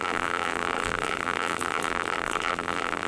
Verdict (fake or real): fake